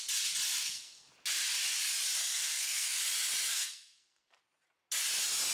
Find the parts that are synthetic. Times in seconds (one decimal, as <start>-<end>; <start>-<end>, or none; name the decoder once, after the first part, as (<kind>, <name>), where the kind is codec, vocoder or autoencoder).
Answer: 0.6-1.1 (codec, SNAC); 2.2-3.0; 3.5-4.4